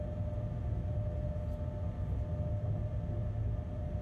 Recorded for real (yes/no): yes